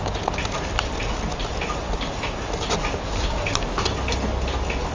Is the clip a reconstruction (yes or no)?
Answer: no